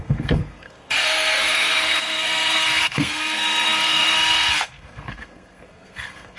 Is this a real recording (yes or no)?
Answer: no